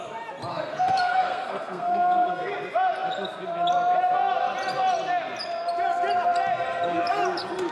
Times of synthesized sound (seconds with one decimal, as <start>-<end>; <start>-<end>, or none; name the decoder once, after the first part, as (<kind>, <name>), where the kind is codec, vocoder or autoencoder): 0.5-2.5 (codec, SNAC)